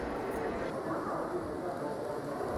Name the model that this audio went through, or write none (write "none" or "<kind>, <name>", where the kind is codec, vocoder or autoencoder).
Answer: none